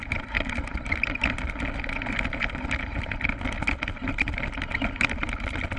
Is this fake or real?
real